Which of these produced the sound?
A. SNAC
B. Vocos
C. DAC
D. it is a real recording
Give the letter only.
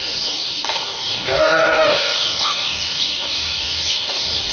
C